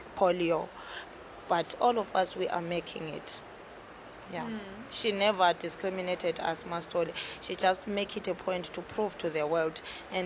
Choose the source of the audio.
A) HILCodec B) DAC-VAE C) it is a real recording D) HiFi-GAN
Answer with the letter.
C